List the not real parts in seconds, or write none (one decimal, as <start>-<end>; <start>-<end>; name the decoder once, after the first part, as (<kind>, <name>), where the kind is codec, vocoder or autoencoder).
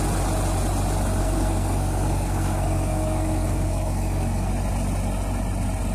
1.2-4.5 (codec, SNAC)